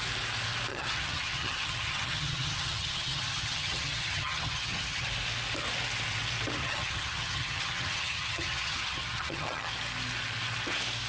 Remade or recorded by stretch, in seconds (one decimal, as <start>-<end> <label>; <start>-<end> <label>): 0.0-0.7 recorded; 0.7-5.1 remade; 5.1-6.6 recorded; 6.6-9.7 remade; 9.7-11.1 recorded

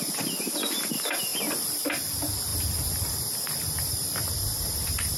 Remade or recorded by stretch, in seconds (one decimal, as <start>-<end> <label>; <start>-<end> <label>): 0.0-3.9 recorded; 3.9-4.7 remade; 4.7-5.2 recorded